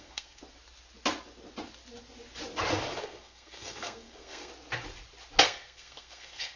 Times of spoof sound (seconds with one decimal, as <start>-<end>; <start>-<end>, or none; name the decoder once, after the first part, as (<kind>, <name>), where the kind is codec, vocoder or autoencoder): 0.0-0.4 (codec, SNAC); 3.0-4.5; 5.4-6.6